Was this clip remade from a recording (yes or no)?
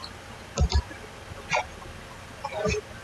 no